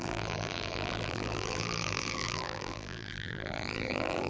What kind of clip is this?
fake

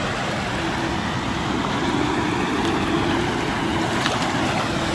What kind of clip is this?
real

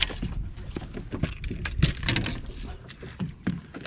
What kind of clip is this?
real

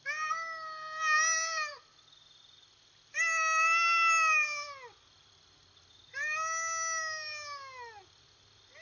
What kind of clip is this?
real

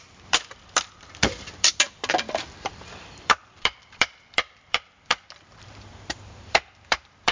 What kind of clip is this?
fake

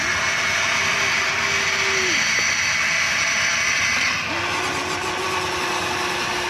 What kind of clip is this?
real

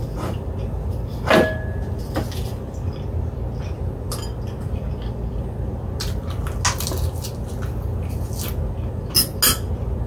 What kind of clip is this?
real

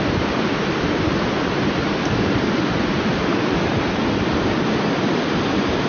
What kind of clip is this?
fake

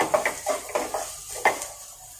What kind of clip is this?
real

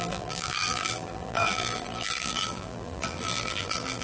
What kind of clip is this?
fake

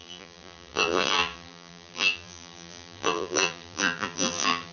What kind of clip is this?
fake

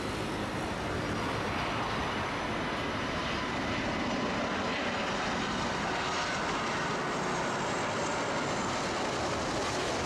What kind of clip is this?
real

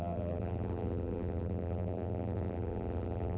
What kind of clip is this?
fake